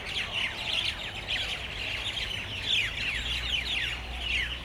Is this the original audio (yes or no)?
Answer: yes